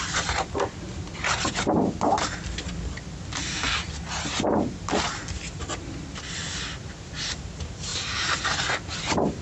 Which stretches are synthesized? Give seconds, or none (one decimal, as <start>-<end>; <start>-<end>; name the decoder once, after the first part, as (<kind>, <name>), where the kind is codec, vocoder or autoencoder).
none